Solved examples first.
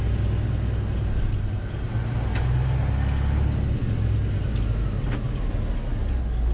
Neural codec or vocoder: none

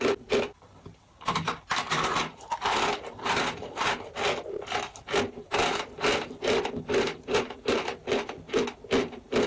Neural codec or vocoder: none